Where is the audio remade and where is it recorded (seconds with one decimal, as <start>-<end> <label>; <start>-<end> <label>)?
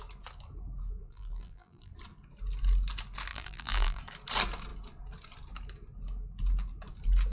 0.0-1.0 recorded; 1.0-1.9 remade; 1.9-3.3 recorded; 3.3-4.0 remade; 4.0-7.3 recorded